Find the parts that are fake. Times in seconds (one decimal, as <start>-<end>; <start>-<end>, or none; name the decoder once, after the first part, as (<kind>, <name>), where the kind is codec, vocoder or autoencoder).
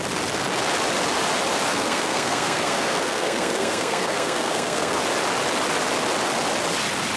1.7-5.0 (codec, SNAC)